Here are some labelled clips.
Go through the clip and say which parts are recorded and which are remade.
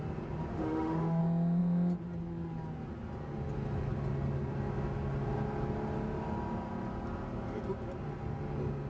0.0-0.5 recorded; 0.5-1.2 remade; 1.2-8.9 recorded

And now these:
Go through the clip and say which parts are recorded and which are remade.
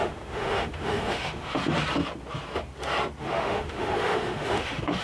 0.0-1.6 remade; 1.6-3.2 recorded; 3.2-5.0 remade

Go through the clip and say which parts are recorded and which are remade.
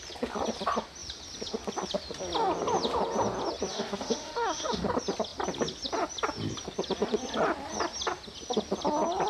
0.0-3.7 recorded; 3.7-4.8 remade; 4.8-9.3 recorded